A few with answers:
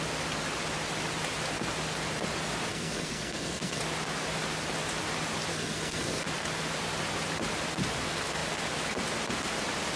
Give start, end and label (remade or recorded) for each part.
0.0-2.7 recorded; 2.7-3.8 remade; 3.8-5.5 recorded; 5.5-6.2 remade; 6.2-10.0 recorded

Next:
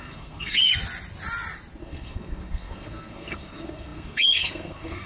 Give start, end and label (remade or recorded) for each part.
0.0-0.7 remade; 0.7-1.8 recorded; 1.8-5.1 remade

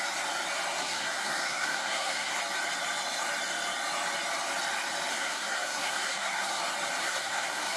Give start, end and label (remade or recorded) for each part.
0.0-0.8 recorded; 0.8-2.4 remade; 2.4-5.1 recorded; 5.1-6.6 remade; 6.6-7.0 recorded; 7.0-7.8 remade